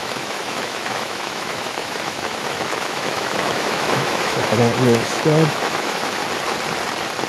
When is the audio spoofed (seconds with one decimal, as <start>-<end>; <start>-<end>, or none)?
0.0-6.2